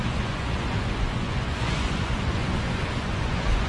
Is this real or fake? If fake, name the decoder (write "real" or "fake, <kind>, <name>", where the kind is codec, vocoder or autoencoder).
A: fake, vocoder, Vocos